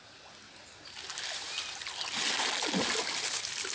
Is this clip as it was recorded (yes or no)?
yes